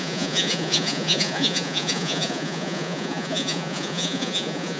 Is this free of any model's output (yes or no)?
no